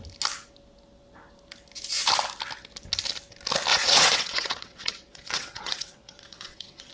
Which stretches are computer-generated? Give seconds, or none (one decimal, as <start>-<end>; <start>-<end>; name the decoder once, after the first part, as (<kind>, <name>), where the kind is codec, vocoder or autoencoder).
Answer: 3.7-6.9 (vocoder, WaveNeXt)